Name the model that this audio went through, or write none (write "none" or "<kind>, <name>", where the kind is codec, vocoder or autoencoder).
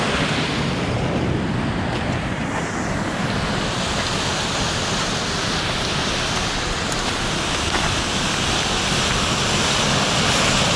none